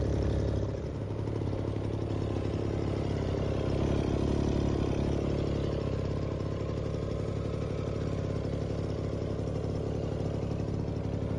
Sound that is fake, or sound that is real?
real